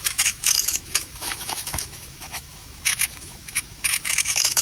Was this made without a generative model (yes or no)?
no